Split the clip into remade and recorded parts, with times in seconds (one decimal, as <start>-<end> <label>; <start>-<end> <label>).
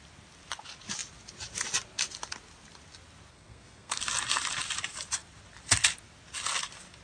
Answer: 0.0-3.3 recorded; 3.3-4.0 remade; 4.0-7.0 recorded